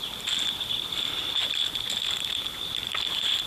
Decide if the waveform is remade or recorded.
recorded